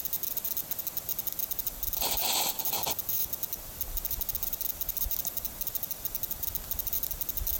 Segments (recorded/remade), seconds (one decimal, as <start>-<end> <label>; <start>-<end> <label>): 0.0-7.6 recorded